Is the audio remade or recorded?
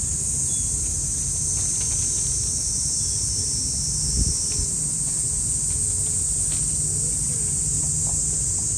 recorded